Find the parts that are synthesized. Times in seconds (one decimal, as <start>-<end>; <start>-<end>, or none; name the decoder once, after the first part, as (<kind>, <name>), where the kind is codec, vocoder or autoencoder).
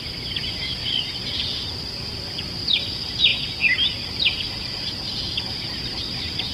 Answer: none